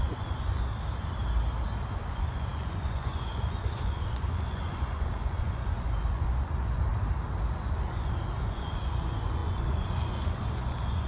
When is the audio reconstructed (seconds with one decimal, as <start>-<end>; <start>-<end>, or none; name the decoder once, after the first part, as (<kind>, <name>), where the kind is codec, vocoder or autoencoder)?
0.0-0.7 (vocoder, Vocos); 1.9-6.9; 7.6-11.1